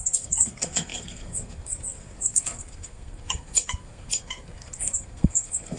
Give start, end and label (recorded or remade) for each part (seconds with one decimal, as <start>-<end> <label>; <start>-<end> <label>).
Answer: 0.0-5.8 remade